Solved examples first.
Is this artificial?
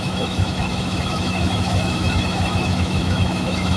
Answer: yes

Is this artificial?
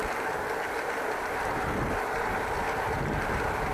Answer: no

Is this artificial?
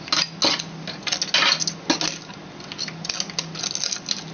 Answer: no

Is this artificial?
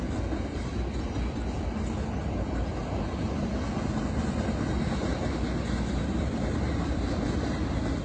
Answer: no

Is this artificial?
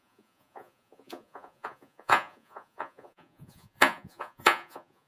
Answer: yes